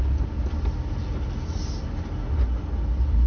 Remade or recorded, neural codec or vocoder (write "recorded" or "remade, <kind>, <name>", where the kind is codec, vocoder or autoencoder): recorded